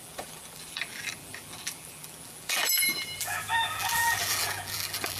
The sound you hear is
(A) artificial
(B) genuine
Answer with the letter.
A